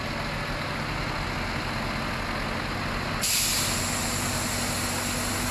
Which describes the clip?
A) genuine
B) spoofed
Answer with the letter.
A